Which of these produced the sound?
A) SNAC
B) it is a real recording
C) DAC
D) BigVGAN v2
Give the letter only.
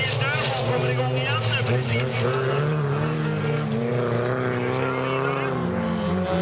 B